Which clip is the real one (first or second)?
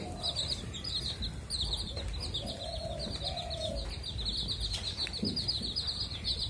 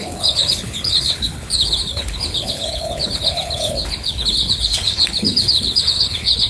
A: first